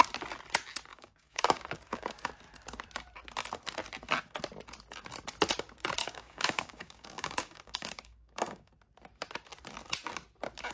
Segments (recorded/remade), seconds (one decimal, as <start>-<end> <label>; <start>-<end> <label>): 0.0-0.9 recorded; 0.9-2.3 remade; 2.3-6.0 recorded; 6.0-8.7 remade; 8.7-10.7 recorded

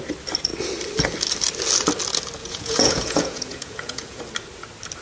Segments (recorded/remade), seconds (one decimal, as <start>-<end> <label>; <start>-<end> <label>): 0.0-2.4 recorded; 2.4-4.2 remade; 4.2-5.0 recorded

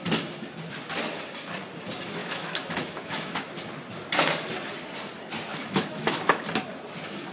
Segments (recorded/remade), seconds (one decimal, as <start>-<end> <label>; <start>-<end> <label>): 0.0-2.2 recorded; 2.2-3.5 remade; 3.5-5.5 recorded; 5.5-6.4 remade; 6.4-7.3 recorded